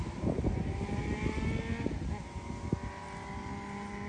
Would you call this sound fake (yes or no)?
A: no